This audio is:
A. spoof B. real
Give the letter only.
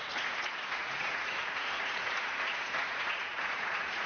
A